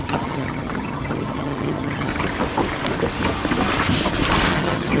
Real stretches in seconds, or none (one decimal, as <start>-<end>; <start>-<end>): 2.1-4.5

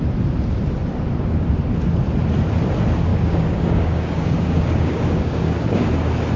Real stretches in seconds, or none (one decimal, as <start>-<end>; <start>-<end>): 0.0-3.1; 5.9-6.4

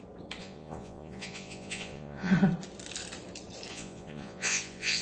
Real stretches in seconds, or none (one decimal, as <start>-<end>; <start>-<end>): 0.0-0.4; 2.3-3.7

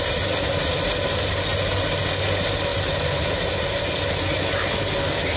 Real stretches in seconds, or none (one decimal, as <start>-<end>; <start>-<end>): 0.0-5.4

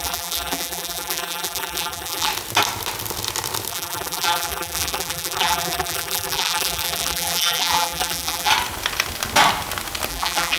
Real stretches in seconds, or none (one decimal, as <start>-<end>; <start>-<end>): 2.3-3.7; 8.5-10.1

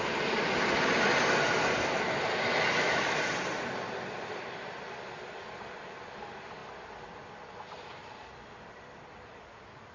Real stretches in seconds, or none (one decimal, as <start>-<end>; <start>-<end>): 0.0-9.9

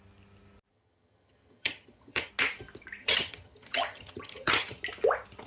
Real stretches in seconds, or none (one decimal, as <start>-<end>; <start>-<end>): 0.0-0.7; 2.3-3.0; 4.8-5.5

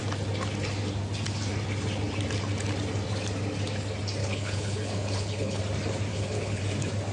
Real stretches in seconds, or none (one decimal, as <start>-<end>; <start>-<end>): 0.0-4.2; 5.6-6.1; 6.6-7.1